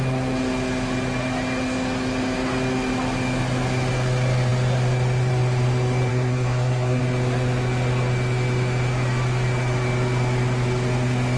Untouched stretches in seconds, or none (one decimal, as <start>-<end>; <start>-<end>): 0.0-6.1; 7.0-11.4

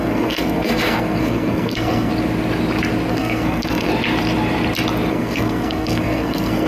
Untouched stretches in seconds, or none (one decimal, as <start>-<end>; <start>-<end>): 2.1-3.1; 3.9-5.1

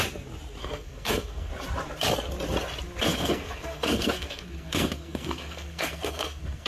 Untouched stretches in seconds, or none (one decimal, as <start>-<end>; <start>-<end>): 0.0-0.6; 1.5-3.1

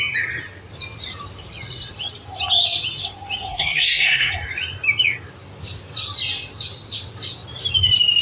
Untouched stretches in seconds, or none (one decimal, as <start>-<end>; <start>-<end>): 0.0-3.5; 4.3-8.2

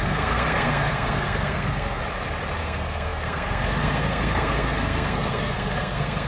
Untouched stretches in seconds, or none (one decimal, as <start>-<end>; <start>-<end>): 2.0-2.6